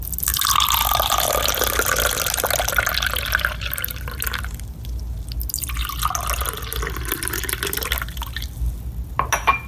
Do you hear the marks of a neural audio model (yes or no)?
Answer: no